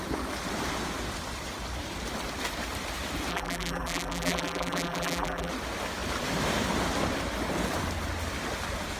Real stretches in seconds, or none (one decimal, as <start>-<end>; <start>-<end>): 0.0-3.3; 5.5-9.0